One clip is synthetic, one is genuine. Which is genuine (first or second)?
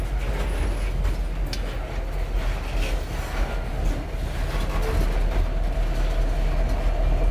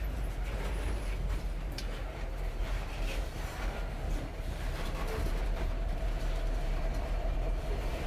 first